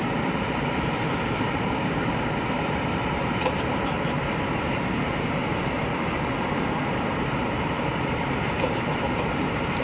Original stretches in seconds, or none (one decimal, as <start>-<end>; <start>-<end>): 5.4-6.9